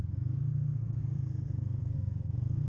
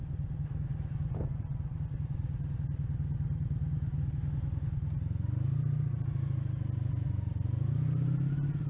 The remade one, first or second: first